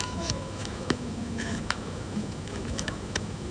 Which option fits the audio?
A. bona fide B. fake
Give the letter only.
B